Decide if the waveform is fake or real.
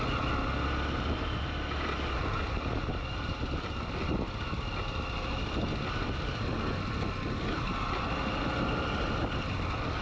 real